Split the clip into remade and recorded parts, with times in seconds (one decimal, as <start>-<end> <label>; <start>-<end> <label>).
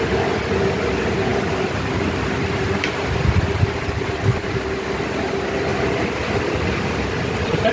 0.0-7.7 recorded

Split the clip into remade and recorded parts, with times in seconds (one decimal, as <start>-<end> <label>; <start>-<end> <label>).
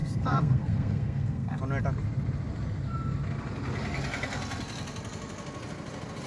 0.0-1.6 remade; 1.6-6.3 recorded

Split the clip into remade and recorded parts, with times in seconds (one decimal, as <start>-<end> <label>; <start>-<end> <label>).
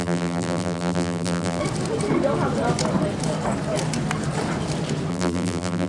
0.0-1.6 remade; 1.6-5.1 recorded; 5.1-5.9 remade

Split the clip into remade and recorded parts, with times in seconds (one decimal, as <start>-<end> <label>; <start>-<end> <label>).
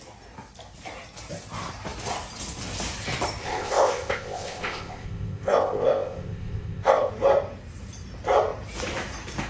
0.0-3.4 recorded; 3.4-7.1 remade; 7.1-9.5 recorded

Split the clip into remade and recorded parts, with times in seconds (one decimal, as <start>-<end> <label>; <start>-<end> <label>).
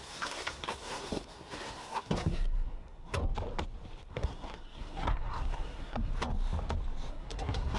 0.0-3.2 remade; 3.2-4.1 recorded; 4.1-6.1 remade; 6.1-7.1 recorded; 7.1-7.8 remade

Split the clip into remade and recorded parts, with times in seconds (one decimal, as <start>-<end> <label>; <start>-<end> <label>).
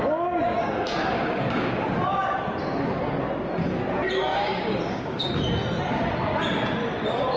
0.0-0.6 recorded; 0.6-1.9 remade; 1.9-4.3 recorded; 4.3-5.3 remade; 5.3-7.4 recorded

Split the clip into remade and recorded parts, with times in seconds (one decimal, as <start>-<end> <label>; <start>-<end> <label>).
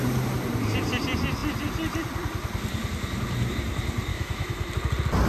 0.0-4.1 recorded; 4.1-4.7 remade; 4.7-5.3 recorded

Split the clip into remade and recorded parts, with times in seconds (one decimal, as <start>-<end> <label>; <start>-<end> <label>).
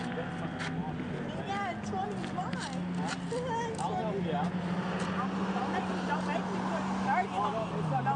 0.0-8.2 recorded